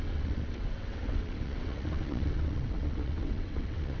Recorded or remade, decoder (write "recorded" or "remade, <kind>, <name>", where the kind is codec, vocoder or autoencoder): remade, vocoder, WaveNeXt